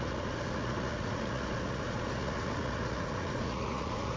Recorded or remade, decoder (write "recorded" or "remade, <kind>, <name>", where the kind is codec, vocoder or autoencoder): remade, vocoder, Vocos